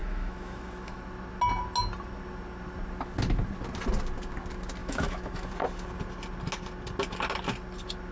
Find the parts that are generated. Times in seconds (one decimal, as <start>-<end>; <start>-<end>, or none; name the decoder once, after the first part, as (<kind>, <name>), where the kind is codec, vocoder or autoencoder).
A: 0.0-1.0 (autoencoder, DAC-VAE); 4.8-5.5